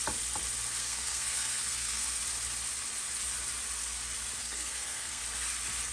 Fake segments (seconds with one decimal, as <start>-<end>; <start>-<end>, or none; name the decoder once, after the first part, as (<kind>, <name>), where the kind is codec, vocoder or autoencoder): 0.8-2.2 (codec, SNAC); 4.4-5.2